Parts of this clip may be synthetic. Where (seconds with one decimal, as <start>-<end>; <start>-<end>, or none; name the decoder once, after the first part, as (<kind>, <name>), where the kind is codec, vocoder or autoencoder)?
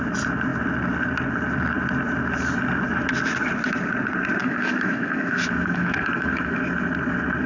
4.4-6.6 (autoencoder, DAC-VAE)